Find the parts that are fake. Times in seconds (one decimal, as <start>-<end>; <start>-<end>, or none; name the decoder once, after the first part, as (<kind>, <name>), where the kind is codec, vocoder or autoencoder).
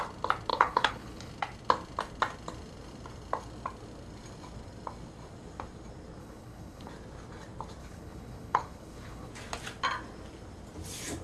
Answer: 0.5-1.3 (codec, HILCodec); 6.2-6.9; 7.8-9.3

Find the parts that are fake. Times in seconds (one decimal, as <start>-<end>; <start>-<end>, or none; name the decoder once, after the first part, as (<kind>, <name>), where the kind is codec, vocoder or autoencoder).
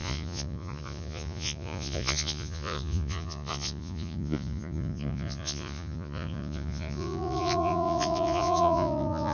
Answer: 0.0-9.3 (vocoder, Vocos)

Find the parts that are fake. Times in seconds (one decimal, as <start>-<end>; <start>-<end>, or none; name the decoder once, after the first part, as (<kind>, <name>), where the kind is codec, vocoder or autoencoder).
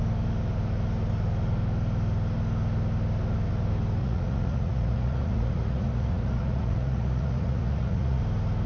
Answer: 4.0-8.2 (vocoder, Vocos)